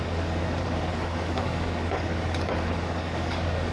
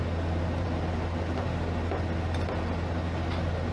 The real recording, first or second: second